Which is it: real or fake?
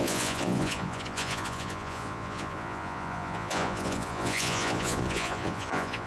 fake